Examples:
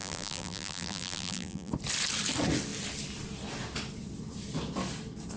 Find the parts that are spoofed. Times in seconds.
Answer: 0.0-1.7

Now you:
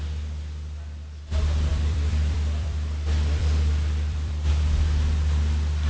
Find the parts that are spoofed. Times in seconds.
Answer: 1.7-4.5

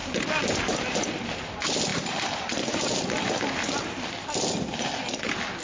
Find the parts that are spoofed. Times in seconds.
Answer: 1.9-4.8

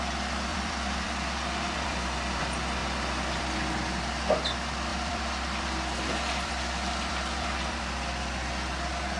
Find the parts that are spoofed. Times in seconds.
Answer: 0.5-2.4; 2.8-3.4; 4.9-7.8